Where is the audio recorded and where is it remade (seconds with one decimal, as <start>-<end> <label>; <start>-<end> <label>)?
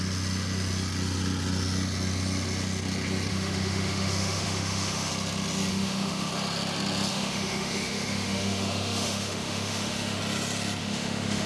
0.0-3.3 recorded; 3.3-5.1 remade; 5.1-5.7 recorded; 5.7-6.3 remade; 6.3-7.1 recorded; 7.1-10.2 remade; 10.2-10.8 recorded; 10.8-11.5 remade